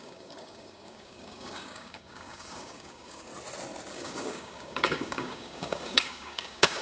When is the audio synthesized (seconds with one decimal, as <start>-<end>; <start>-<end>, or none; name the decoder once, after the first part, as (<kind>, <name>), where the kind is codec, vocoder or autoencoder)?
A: 0.0-3.3 (codec, DAC); 3.9-6.8